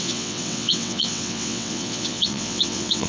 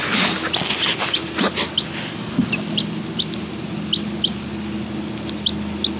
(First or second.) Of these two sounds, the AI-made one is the first